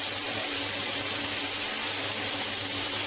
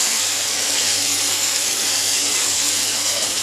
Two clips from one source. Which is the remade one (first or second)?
second